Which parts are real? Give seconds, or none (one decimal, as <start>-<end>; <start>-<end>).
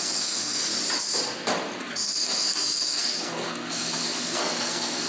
0.7-1.8